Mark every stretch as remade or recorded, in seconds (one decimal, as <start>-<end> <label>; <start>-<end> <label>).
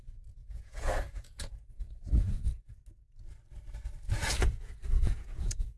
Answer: 0.0-0.4 recorded; 0.4-2.6 remade; 2.6-4.2 recorded; 4.2-5.8 remade